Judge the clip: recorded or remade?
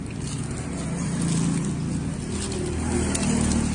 recorded